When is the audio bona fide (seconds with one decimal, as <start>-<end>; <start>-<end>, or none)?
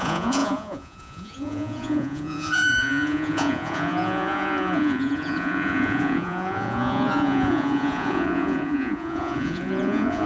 none